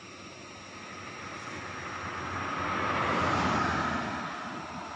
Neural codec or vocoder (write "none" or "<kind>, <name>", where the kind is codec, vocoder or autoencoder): none